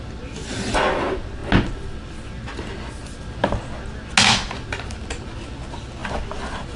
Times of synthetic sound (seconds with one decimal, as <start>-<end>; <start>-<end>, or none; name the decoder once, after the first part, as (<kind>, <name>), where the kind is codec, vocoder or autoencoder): none